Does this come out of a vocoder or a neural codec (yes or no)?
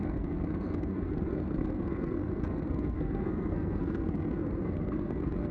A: yes